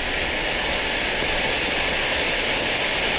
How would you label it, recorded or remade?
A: recorded